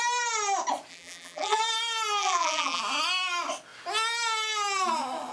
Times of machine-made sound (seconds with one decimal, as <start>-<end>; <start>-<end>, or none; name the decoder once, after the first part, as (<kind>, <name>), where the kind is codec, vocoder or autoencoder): 0.9-1.6 (vocoder, BigVGAN v2); 2.2-2.8